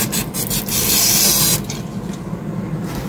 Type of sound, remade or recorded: recorded